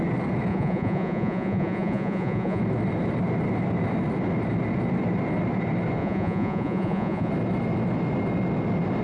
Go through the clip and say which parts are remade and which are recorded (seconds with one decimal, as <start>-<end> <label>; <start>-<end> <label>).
0.0-0.5 recorded; 0.5-2.6 remade; 2.6-6.0 recorded; 6.0-7.3 remade; 7.3-9.0 recorded